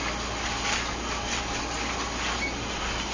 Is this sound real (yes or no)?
yes